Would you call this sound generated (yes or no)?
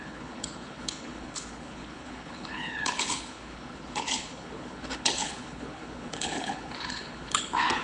yes